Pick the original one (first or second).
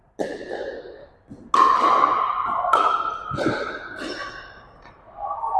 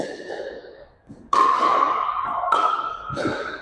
first